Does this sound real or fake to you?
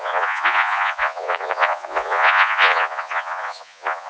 fake